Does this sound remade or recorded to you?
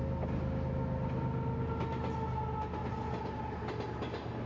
recorded